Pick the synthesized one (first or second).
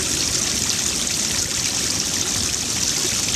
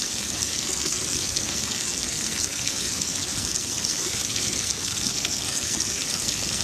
second